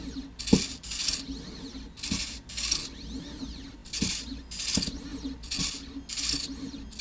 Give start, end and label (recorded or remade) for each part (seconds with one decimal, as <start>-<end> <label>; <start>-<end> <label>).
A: 0.0-7.0 recorded